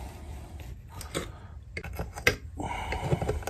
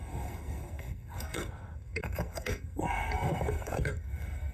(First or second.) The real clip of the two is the first